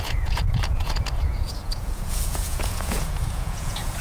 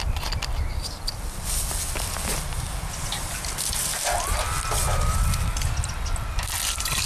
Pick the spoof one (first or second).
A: first